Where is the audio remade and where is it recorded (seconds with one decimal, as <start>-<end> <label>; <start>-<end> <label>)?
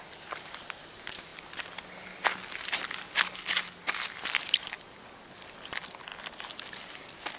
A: 0.0-7.4 recorded